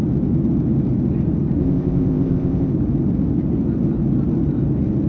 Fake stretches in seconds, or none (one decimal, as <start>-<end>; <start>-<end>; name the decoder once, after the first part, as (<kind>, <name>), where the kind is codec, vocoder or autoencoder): 1.6-2.7 (codec, ZipCodec)